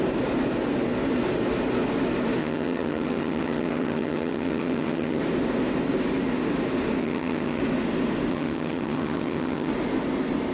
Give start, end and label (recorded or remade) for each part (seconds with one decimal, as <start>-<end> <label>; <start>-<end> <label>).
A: 0.0-2.4 recorded; 2.4-5.2 remade; 5.2-7.0 recorded; 7.0-7.6 remade; 7.6-8.3 recorded; 8.3-9.7 remade; 9.7-10.5 recorded